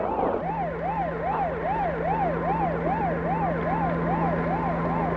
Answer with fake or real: real